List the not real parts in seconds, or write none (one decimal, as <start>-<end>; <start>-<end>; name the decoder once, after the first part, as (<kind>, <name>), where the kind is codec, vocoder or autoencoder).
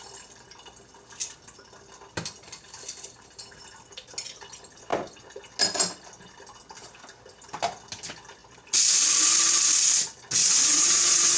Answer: 10.4-11.4 (vocoder, WaveNeXt)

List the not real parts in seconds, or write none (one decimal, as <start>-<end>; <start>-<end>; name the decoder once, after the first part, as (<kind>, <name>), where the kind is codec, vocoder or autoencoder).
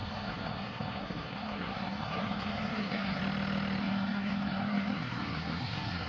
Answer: 0.0-3.2 (codec, SNAC); 3.8-6.1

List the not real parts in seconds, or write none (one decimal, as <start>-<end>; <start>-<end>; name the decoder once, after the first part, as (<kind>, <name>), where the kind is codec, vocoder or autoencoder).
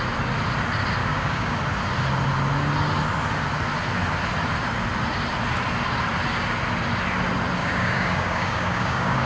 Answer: 1.0-1.6 (codec, DAC); 7.6-9.3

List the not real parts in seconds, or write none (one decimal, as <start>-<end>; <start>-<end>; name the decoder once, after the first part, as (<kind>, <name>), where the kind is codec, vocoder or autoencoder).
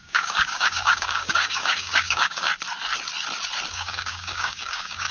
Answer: 0.0-2.5 (codec, DAC); 3.7-5.1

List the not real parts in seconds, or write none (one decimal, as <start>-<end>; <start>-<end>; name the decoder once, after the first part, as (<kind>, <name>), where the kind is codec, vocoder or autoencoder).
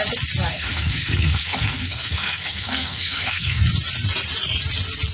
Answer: 0.5-3.6 (codec, SNAC)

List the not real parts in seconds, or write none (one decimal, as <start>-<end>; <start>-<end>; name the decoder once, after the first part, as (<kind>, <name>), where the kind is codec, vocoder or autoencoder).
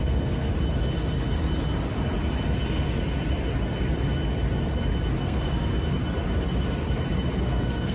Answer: 0.0-0.5 (codec, SNAC); 5.2-5.7; 7.4-7.9